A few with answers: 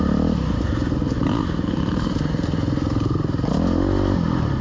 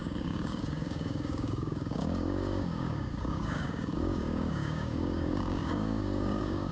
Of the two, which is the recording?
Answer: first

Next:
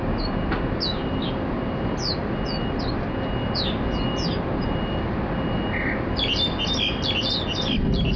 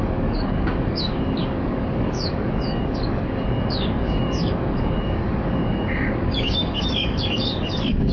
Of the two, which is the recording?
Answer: first